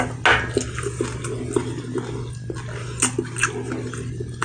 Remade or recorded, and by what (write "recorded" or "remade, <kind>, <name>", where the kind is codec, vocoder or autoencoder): recorded